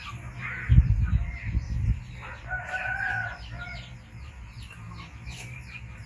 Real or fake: real